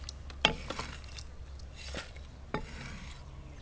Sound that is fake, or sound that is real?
real